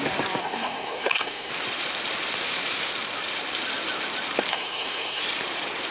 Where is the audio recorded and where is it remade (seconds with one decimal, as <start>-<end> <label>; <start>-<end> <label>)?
0.0-0.4 recorded; 0.4-1.5 remade; 1.5-4.5 recorded; 4.5-5.2 remade; 5.2-5.9 recorded